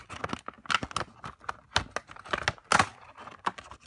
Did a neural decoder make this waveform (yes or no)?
no